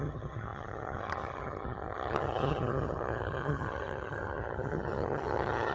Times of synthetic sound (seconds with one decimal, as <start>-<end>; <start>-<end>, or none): 0.0-5.7